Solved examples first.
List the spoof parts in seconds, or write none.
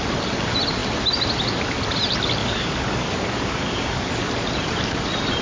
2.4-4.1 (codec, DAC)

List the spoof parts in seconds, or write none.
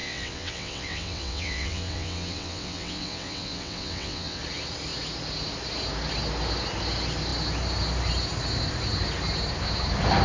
0.0-4.4 (vocoder, WaveNeXt)